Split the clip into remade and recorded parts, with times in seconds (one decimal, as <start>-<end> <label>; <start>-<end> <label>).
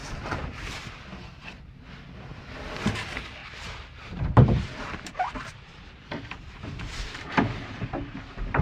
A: 0.0-0.8 remade; 0.8-3.4 recorded; 3.4-7.3 remade; 7.3-8.6 recorded